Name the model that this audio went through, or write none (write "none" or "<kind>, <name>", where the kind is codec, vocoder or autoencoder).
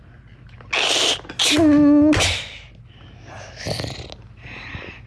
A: none